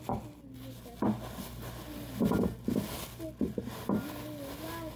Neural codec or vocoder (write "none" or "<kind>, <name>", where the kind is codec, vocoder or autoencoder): none